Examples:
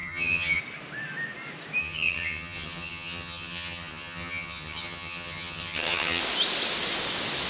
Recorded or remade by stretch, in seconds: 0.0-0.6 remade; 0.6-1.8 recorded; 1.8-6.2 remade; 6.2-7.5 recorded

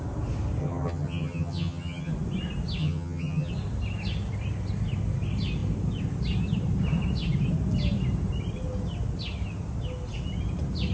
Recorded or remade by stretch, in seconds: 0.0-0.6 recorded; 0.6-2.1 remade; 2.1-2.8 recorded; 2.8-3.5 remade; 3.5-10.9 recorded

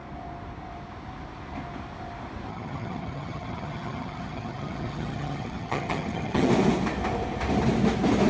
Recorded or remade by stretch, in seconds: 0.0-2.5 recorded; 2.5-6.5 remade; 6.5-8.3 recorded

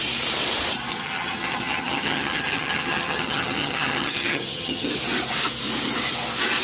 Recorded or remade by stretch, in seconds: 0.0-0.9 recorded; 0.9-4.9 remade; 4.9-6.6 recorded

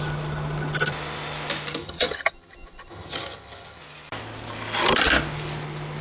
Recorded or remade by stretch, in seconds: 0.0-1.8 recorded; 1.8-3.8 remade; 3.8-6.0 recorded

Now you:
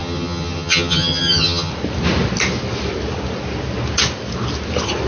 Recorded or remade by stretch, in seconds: 0.0-1.7 remade; 1.7-5.1 recorded